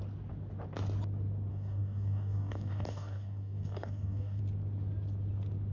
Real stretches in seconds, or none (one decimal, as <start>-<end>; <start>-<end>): 0.0-1.5; 4.4-5.7